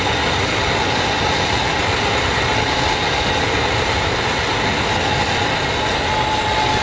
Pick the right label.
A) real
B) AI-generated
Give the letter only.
A